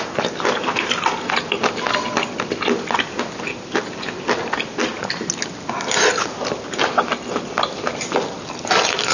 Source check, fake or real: real